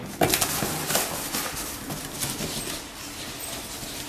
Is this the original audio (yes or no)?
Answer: yes